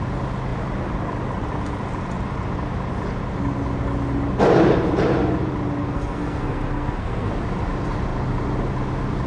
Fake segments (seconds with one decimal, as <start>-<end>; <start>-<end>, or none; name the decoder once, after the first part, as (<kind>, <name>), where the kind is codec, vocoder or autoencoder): 5.8-7.3 (codec, SNAC)